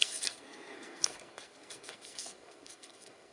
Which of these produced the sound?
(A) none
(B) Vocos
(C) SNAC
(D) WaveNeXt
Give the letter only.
C